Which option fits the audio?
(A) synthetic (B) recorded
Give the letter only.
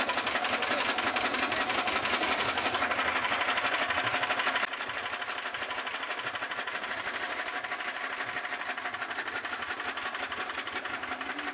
B